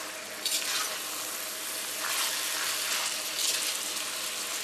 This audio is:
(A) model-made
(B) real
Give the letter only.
B